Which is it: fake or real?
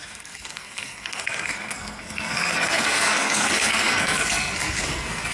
fake